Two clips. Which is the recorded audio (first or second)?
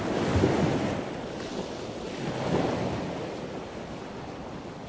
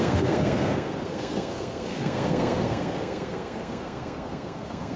first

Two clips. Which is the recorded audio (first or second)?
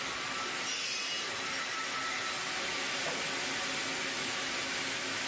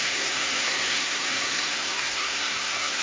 first